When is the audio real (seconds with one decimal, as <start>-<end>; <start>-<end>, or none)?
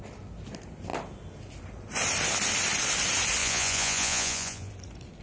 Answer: 0.0-3.4; 4.7-5.2